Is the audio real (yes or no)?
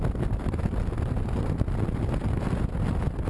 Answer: yes